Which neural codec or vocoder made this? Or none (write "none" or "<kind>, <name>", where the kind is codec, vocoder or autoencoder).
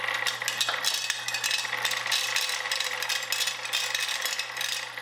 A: none